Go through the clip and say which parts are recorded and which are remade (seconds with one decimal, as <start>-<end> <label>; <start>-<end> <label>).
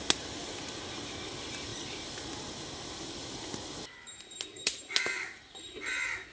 0.0-3.2 recorded; 3.2-4.7 remade; 4.7-6.3 recorded